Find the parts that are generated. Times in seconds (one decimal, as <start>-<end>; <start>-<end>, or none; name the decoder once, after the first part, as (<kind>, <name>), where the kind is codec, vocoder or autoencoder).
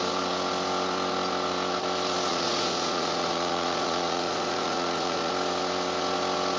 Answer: 2.3-5.3 (vocoder, Vocos)